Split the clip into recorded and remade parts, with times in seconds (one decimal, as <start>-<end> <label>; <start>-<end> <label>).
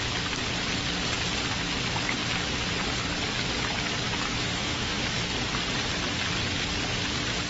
0.0-4.3 recorded; 4.3-5.0 remade; 5.0-7.5 recorded